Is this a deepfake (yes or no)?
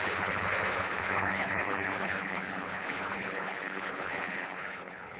yes